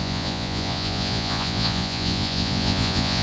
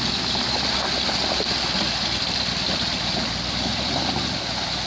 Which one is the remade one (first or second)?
first